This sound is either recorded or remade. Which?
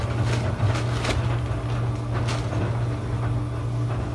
recorded